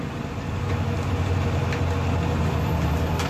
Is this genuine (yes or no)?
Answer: yes